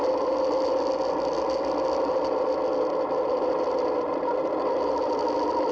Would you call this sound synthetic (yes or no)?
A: no